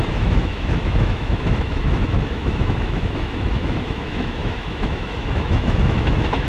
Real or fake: fake